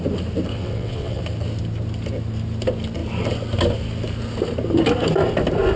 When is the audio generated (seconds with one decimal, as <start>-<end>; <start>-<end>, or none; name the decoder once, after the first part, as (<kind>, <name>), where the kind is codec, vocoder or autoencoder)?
0.5-1.2 (vocoder, WaveNeXt)